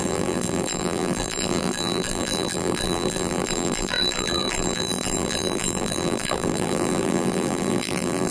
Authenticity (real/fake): fake